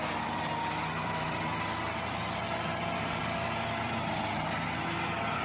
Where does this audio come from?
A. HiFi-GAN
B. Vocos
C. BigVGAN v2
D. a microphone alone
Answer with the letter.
D